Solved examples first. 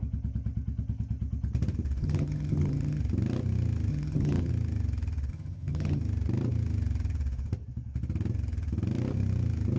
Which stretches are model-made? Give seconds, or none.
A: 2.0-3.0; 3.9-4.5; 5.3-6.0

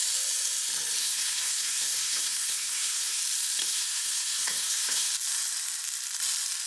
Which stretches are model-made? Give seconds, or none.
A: 1.0-3.2; 3.6-5.1

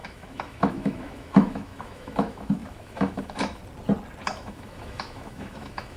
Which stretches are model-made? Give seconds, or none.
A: 0.0-3.6; 4.3-6.0